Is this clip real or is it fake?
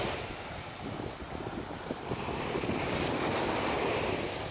real